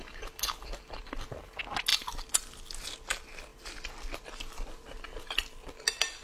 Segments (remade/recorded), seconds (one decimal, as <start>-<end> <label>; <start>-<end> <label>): 0.0-6.2 recorded